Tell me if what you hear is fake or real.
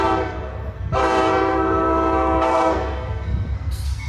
fake